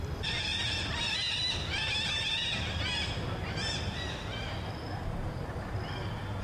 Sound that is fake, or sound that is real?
real